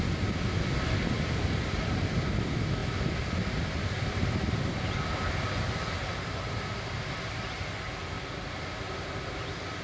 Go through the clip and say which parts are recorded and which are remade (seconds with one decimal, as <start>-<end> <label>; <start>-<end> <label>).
0.0-9.8 recorded